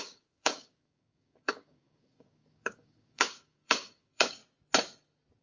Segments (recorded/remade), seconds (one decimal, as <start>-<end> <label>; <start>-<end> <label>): 0.0-4.4 remade; 4.4-5.4 recorded